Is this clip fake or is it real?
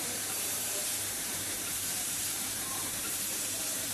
fake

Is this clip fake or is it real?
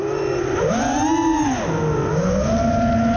real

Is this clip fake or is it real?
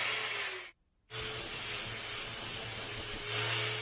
real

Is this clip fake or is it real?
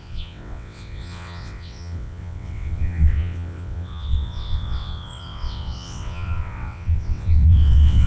fake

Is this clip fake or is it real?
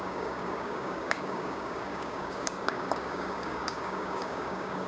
fake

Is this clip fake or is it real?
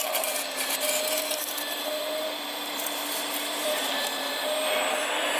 fake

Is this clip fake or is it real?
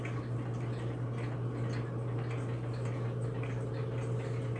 real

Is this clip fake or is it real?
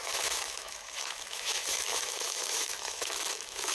fake